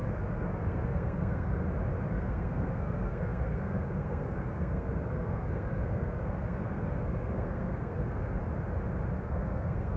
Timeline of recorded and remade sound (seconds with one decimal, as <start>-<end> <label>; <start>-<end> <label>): 0.0-1.6 remade; 1.6-2.1 recorded; 2.1-8.4 remade; 8.4-9.2 recorded; 9.2-10.0 remade